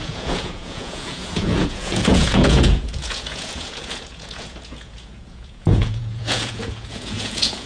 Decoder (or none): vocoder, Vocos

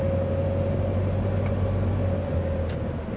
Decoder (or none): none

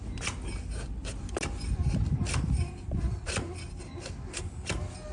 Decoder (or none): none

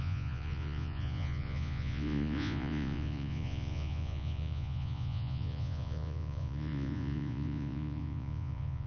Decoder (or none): vocoder, Vocos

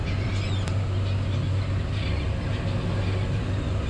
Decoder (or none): none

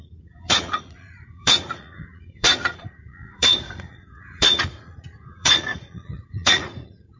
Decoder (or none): vocoder, Vocos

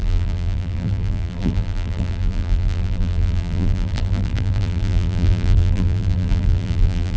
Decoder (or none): vocoder, BigVGAN v2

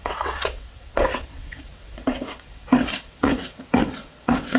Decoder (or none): vocoder, WaveNeXt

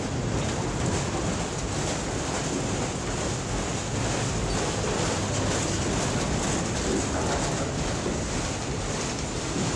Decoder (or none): none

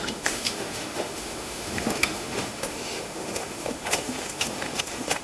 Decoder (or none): autoencoder, DAC-VAE